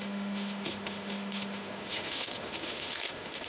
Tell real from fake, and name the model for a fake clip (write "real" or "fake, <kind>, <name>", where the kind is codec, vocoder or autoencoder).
fake, autoencoder, DAC-VAE